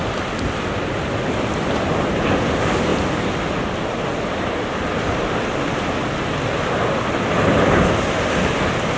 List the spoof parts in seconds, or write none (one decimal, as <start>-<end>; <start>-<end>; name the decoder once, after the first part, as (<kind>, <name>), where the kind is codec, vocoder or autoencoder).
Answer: none

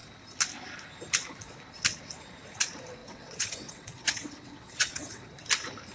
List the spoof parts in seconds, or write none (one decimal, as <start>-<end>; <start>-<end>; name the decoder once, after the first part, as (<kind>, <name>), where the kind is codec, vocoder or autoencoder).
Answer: 3.0-5.3 (vocoder, WaveNeXt)

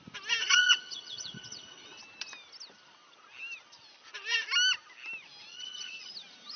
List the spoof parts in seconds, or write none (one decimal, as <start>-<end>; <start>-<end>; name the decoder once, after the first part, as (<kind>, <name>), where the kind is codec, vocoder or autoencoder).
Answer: 0.4-2.0 (vocoder, WaveNeXt); 5.5-6.1